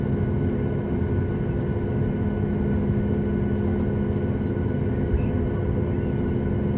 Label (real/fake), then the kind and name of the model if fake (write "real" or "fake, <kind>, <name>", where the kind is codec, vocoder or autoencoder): real